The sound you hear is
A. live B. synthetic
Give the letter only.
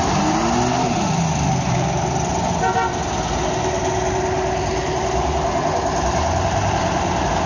A